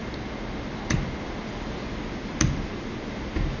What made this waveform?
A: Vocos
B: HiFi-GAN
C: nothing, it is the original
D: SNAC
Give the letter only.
C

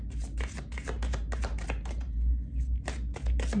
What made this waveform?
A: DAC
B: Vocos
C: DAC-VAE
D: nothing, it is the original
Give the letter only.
D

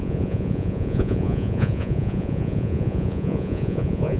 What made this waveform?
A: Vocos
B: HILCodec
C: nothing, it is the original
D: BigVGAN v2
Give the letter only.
A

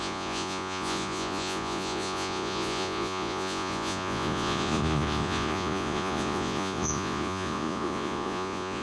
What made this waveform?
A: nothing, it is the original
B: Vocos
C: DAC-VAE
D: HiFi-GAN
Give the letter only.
B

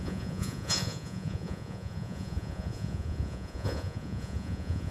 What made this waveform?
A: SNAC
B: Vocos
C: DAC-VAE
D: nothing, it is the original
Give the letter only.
B